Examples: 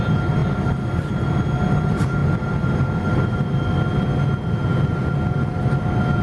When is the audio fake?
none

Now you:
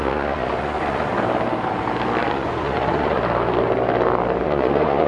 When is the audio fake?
0.0-1.1 (vocoder, Vocos); 2.2-3.2; 4.4-5.1

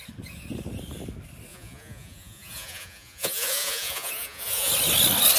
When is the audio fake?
1.5-4.7 (vocoder, Vocos)

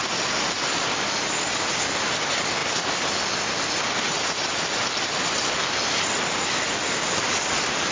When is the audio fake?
none